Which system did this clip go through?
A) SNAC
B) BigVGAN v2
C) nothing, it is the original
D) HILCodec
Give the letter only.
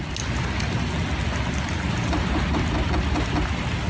C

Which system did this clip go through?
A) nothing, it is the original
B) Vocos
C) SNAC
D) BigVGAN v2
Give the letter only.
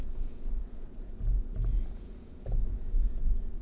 B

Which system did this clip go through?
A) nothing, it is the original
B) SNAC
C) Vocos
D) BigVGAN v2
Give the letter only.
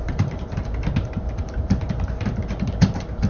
D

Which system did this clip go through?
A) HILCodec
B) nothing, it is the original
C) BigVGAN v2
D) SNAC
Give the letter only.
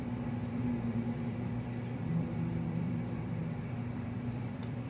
C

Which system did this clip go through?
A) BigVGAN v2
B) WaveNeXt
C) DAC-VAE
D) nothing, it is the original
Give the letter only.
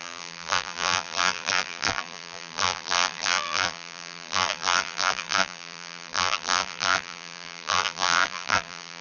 A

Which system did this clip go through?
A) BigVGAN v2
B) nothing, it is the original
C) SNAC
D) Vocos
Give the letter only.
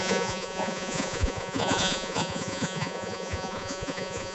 D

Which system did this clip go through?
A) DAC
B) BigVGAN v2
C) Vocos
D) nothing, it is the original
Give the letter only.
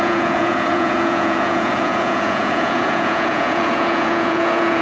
C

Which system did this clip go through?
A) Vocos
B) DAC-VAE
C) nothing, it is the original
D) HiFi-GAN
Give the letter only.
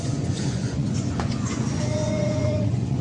A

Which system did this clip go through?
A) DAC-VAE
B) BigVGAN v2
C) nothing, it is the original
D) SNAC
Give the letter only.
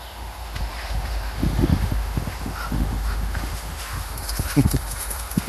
A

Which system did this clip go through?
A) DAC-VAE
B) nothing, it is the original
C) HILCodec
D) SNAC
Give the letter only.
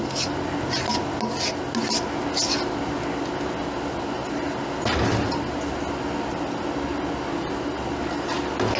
B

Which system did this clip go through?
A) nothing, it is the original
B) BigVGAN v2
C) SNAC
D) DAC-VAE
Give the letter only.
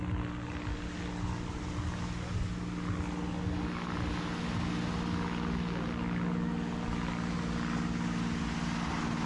A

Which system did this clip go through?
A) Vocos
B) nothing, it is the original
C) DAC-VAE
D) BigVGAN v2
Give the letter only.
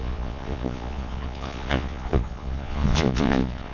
A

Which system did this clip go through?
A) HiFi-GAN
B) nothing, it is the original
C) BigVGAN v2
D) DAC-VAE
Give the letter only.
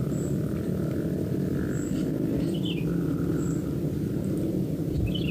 B